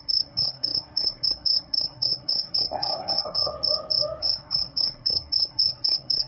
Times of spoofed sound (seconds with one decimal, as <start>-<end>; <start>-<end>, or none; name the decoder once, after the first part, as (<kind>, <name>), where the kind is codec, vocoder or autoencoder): 0.0-3.5 (codec, SNAC); 4.2-6.3